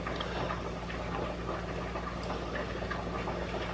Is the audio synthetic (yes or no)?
no